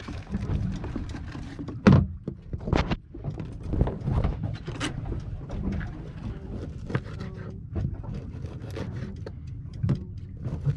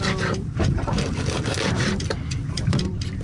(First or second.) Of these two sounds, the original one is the first